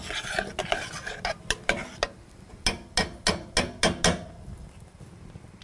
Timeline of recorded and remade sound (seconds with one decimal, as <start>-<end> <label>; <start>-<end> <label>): 0.0-5.6 recorded